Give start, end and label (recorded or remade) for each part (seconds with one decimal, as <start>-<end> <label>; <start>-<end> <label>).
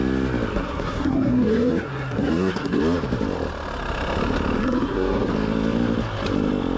0.0-0.5 recorded; 0.5-2.8 remade; 2.8-4.6 recorded; 4.6-5.3 remade; 5.3-6.8 recorded